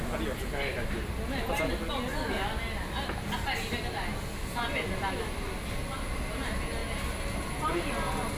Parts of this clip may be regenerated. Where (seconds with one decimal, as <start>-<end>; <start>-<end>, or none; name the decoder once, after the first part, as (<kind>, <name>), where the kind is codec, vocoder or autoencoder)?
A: none